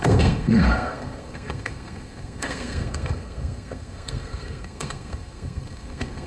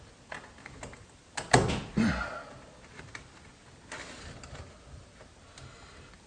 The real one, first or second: second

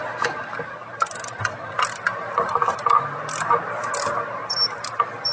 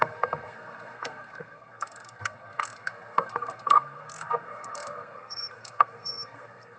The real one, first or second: first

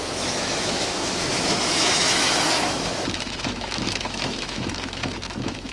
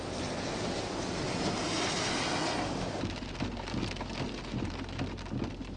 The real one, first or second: second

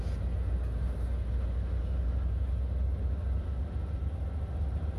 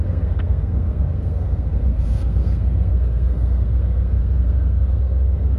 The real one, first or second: first